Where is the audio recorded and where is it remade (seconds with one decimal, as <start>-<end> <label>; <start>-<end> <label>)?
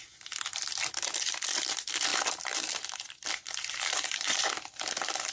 0.0-2.1 recorded; 2.1-4.4 remade; 4.4-5.3 recorded